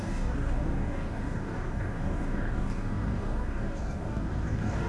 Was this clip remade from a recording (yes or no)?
yes